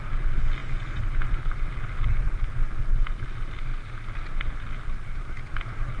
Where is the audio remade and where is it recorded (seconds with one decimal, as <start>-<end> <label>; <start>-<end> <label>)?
0.0-6.0 recorded